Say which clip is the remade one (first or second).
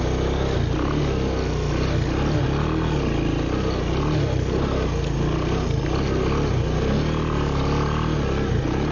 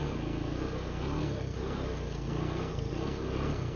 second